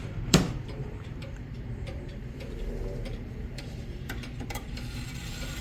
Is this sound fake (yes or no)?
yes